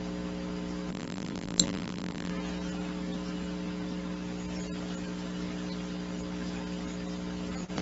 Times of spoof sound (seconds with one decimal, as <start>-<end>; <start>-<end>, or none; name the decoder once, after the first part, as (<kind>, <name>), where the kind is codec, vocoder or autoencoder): 0.9-2.3 (vocoder, BigVGAN v2)